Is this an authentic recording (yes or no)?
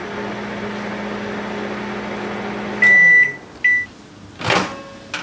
yes